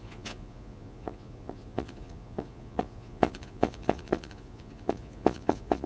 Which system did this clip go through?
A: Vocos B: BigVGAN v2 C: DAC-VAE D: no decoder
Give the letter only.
A